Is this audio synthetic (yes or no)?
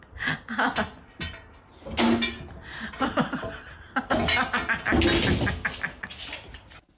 no